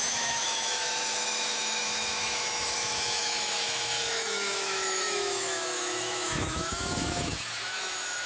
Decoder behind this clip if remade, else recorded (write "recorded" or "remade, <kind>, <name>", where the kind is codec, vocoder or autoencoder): remade, autoencoder, DAC-VAE